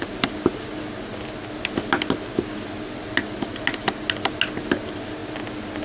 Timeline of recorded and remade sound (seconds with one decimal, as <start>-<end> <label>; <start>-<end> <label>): 0.0-5.8 recorded